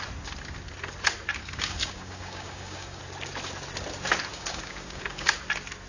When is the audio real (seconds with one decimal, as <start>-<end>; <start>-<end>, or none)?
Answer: 0.0-1.4; 3.0-4.3; 5.4-5.9